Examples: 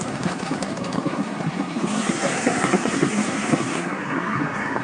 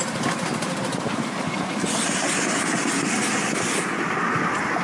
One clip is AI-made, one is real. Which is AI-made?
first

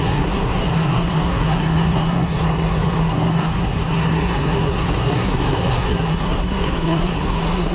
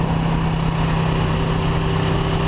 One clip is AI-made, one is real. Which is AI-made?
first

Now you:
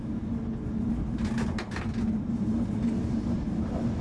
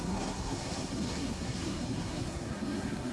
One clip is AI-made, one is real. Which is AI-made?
second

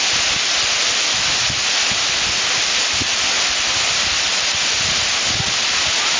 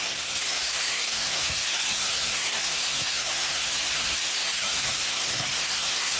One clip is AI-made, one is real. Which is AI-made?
second